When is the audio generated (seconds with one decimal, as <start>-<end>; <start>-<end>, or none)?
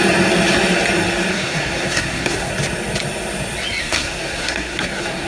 1.3-2.5; 3.8-5.3